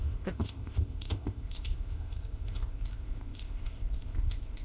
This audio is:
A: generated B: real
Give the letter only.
A